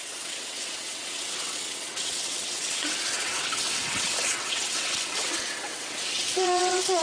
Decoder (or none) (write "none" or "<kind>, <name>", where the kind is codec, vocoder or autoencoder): vocoder, WaveNeXt